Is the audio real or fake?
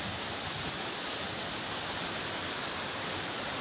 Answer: real